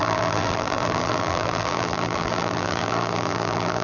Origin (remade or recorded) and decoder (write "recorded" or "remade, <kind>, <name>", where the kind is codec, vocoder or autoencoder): remade, vocoder, BigVGAN v2